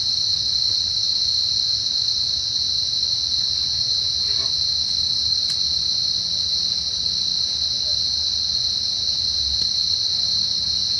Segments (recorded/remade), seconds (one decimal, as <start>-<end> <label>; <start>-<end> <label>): 0.0-11.0 recorded